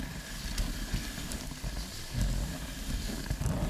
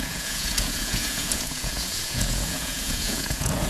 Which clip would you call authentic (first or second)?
first